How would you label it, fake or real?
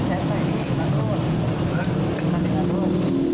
real